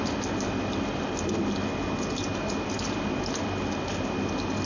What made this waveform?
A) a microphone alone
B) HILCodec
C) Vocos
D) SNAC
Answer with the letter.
A